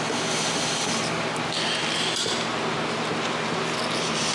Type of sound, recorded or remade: recorded